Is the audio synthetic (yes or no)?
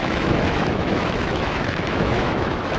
yes